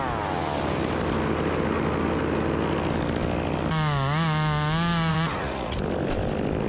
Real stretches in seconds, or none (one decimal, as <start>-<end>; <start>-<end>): 0.0-5.1; 5.8-6.7